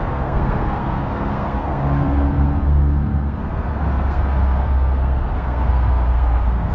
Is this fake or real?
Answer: fake